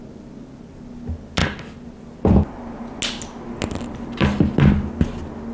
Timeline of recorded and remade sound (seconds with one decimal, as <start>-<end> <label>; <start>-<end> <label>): 0.0-5.5 recorded